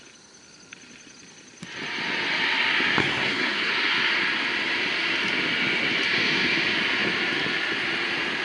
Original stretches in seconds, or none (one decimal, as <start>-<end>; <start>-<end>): 0.0-3.0; 3.7-8.4